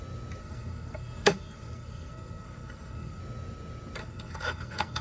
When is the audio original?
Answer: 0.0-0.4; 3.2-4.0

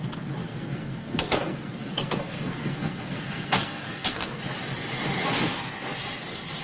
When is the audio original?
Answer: 0.0-0.4; 4.4-6.6

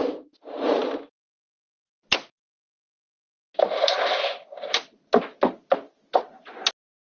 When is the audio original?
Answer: 0.0-7.2

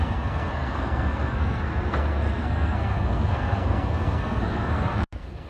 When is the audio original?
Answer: none